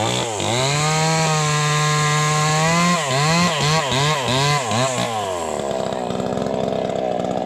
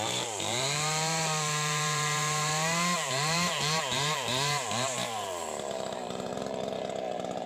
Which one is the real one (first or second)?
first